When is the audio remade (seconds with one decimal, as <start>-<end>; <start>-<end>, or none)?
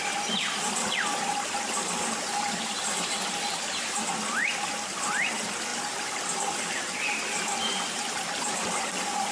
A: 0.0-9.3